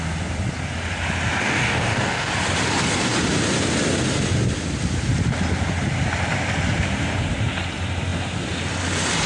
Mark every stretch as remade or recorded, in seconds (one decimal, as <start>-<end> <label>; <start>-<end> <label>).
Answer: 0.0-1.4 recorded; 1.4-2.3 remade; 2.3-9.3 recorded